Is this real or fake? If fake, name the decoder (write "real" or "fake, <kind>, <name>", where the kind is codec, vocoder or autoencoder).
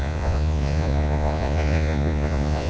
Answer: fake, vocoder, Vocos